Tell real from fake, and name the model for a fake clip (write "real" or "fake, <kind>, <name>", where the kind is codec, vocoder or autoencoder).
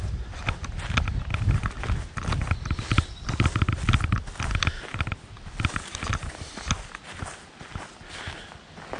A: real